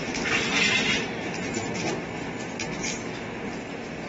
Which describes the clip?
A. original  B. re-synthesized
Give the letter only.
A